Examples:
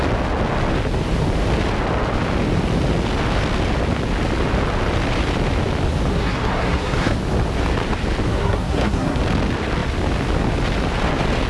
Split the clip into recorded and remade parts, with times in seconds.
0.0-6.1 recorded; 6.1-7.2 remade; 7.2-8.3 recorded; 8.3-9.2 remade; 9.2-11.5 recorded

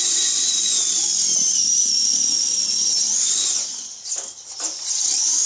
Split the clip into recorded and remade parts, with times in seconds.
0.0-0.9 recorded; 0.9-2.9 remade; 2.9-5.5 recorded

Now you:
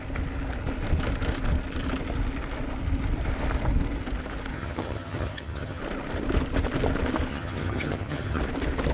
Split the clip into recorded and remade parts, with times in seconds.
0.0-4.5 recorded; 4.5-5.8 remade; 5.8-7.3 recorded; 7.3-8.4 remade; 8.4-8.9 recorded

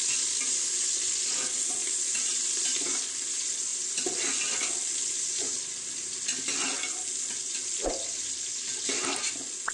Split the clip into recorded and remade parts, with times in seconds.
0.0-9.7 recorded

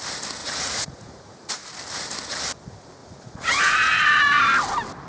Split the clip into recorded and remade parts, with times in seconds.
0.0-0.4 recorded; 0.4-1.5 remade; 1.5-3.0 recorded; 3.0-4.4 remade; 4.4-5.1 recorded